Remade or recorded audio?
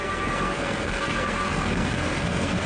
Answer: remade